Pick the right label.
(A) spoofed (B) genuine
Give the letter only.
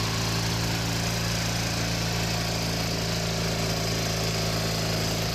B